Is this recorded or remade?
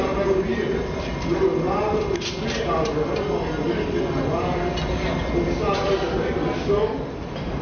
recorded